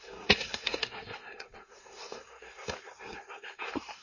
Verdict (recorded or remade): remade